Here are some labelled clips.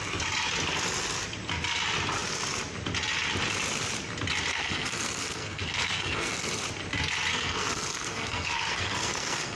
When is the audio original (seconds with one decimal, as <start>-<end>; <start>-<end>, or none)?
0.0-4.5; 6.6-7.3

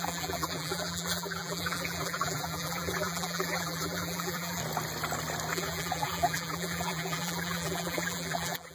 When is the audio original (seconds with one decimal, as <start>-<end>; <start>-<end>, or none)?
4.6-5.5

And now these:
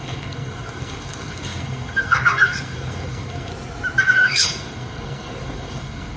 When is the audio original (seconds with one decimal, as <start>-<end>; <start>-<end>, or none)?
3.5-4.0

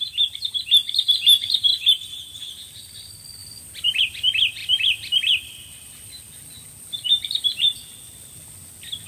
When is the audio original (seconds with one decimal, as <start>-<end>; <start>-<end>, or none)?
0.0-3.4; 4.0-4.6; 5.6-9.1

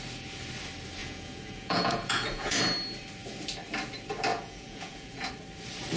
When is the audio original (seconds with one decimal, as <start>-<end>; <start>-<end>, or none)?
0.0-1.0; 2.6-4.3; 5.3-6.0